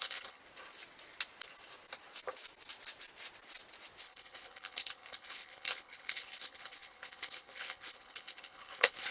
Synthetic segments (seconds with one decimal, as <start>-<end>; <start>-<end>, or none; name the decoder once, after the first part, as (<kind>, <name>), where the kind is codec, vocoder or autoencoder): 0.0-0.4 (codec, HILCodec); 4.0-9.1